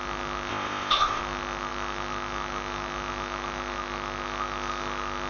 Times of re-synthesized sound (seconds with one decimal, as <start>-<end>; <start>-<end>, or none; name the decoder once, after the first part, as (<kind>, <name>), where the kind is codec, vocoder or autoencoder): 0.5-1.2 (codec, ZipCodec)